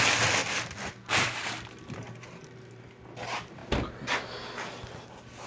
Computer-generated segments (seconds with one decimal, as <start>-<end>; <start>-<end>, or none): 0.4-3.0